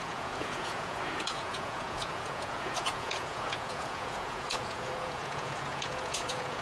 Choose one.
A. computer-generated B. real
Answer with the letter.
A